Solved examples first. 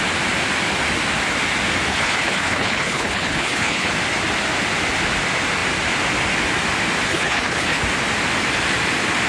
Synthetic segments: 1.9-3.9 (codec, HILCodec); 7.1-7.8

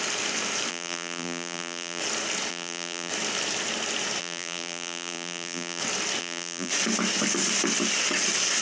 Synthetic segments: 0.7-2.0 (vocoder, BigVGAN v2); 2.5-3.1; 4.2-5.8; 6.2-6.7